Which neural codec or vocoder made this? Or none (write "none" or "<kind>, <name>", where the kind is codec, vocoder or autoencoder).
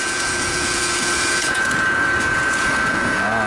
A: vocoder, Vocos